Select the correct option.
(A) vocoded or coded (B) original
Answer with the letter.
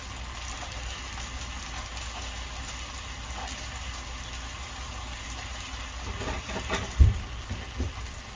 B